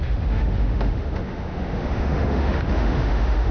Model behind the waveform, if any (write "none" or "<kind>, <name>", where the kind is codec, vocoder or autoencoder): autoencoder, DAC-VAE